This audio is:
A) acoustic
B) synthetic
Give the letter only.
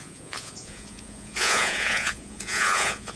B